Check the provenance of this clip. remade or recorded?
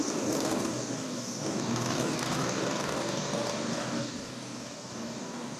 remade